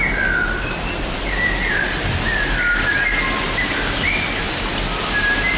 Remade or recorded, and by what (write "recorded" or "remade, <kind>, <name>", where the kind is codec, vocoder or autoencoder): recorded